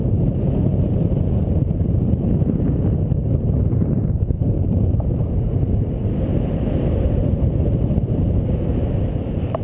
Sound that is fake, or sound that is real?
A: fake